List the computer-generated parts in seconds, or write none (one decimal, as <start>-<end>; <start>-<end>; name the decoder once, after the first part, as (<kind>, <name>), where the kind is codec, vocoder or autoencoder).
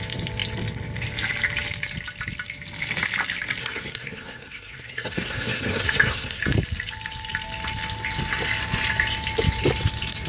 3.6-6.4 (codec, SNAC)